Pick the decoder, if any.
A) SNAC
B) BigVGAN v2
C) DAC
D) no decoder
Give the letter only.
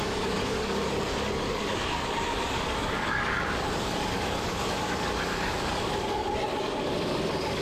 C